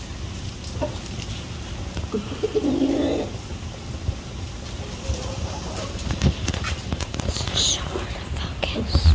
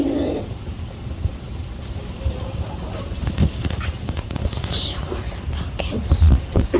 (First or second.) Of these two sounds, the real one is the first